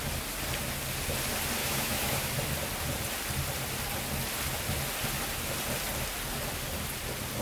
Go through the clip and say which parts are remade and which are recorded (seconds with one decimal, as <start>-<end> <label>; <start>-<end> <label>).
0.0-1.6 recorded; 1.6-2.3 remade; 2.3-7.4 recorded